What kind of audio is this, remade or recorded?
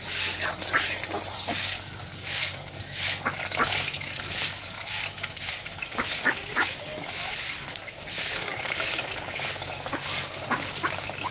remade